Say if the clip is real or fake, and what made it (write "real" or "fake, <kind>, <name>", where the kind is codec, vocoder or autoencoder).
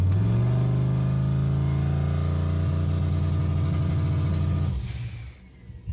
real